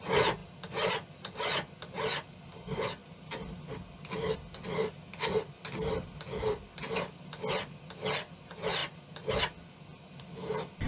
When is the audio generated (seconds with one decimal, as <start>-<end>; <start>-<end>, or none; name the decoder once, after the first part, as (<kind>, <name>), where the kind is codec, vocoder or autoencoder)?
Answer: none